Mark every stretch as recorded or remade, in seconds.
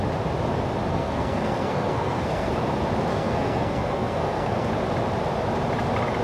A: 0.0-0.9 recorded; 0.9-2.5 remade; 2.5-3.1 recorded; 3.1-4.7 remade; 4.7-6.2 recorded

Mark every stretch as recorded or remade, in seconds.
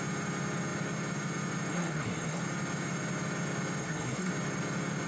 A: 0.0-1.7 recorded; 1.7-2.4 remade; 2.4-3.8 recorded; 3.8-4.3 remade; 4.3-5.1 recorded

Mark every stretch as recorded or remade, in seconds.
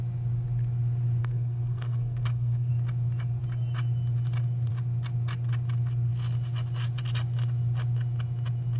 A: 0.0-1.2 recorded; 1.2-2.7 remade; 2.7-8.8 recorded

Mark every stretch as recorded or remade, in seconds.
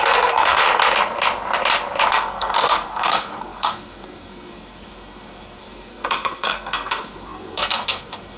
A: 0.0-0.6 remade; 0.6-2.1 recorded; 2.1-8.4 remade